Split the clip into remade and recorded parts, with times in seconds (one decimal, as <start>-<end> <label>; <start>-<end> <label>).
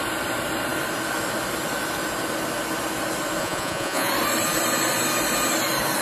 0.0-3.4 recorded; 3.4-4.1 remade; 4.1-6.0 recorded